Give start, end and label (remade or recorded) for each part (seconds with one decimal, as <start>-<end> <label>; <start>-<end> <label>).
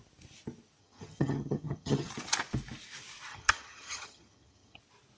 0.0-0.8 recorded; 0.8-2.1 remade; 2.1-3.3 recorded; 3.3-4.8 remade; 4.8-5.2 recorded